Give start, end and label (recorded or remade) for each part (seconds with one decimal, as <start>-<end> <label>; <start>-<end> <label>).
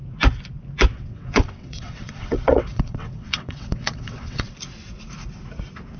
0.0-0.9 recorded; 0.9-4.5 remade; 4.5-6.0 recorded